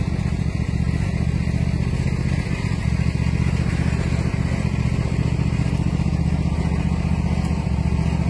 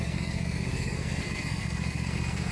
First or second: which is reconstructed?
second